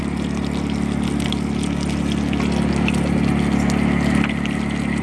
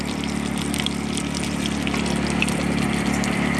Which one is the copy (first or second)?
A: second